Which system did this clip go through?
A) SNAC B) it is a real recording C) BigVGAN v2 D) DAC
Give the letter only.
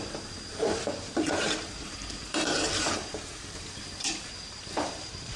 C